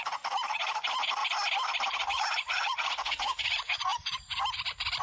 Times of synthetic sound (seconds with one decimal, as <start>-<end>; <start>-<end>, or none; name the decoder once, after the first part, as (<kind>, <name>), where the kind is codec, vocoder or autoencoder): 0.0-1.2 (vocoder, Vocos); 1.9-3.9